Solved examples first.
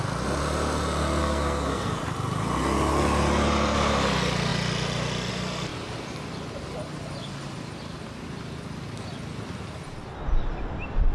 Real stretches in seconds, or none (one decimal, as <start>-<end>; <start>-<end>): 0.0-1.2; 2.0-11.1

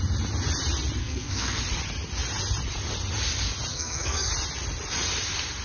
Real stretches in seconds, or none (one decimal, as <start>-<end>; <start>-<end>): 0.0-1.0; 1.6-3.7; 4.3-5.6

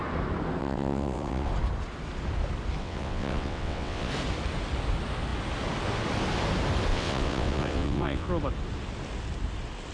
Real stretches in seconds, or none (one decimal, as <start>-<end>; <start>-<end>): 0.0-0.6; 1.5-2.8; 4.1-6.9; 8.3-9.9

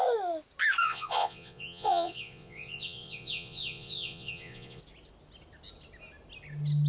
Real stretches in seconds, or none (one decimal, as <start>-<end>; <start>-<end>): 0.0-0.8; 4.8-6.9

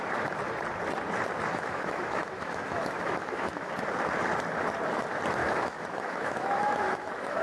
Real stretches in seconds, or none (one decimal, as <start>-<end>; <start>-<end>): 0.0-1.5; 3.7-5.4

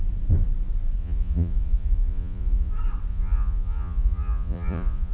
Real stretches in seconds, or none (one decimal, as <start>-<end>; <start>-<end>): 0.0-1.0; 2.7-3.1